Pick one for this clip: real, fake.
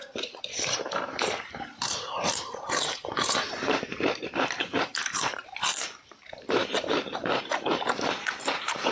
fake